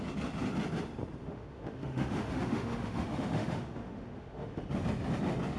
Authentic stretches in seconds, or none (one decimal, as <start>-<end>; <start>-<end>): 0.0-1.2; 4.6-5.6